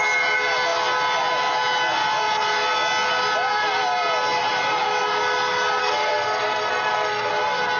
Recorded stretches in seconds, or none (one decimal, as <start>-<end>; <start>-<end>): 0.0-5.8; 7.3-7.8